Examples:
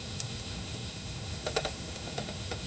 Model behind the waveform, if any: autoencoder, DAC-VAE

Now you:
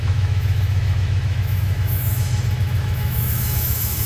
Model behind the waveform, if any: autoencoder, DAC-VAE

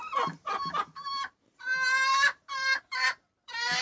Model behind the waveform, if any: vocoder, BigVGAN v2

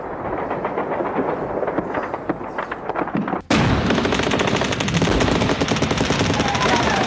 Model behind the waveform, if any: none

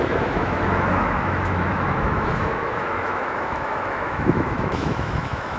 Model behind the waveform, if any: autoencoder, DAC-VAE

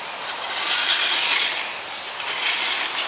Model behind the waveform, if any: none